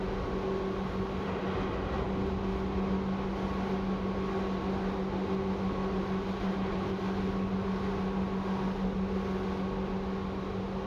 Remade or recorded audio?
recorded